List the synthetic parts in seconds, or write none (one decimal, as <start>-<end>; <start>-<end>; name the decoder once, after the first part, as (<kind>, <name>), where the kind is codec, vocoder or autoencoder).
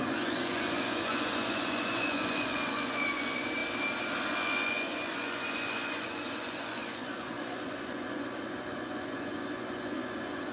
0.0-3.6 (vocoder, Vocos); 4.3-10.5